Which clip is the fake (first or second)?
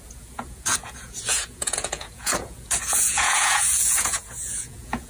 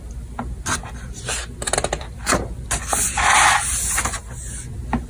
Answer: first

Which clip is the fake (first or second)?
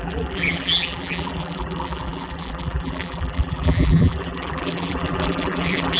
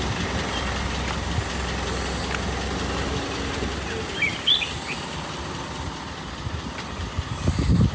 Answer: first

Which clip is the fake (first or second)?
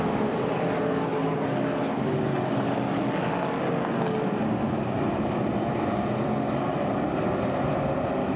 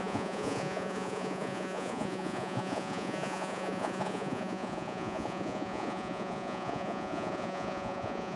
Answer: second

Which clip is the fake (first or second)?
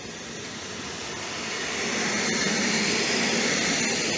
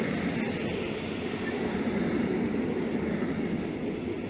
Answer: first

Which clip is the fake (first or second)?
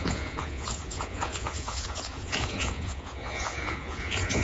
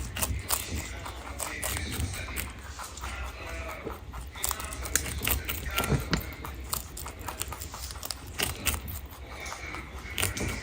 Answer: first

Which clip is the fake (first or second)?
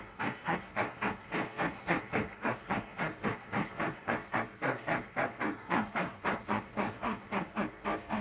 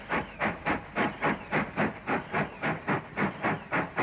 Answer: first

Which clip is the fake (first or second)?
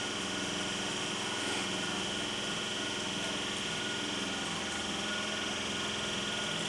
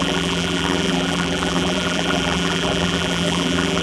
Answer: second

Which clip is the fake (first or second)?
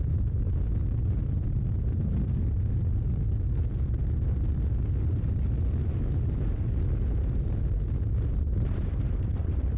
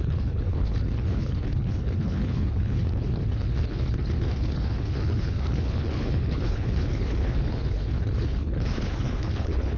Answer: second